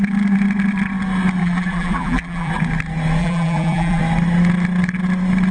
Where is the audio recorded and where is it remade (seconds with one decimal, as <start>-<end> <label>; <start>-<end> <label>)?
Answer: 0.0-1.4 recorded; 1.4-2.5 remade; 2.5-3.2 recorded; 3.2-4.0 remade; 4.0-5.5 recorded